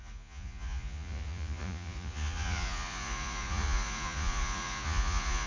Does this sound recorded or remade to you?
remade